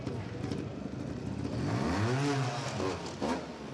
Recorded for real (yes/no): yes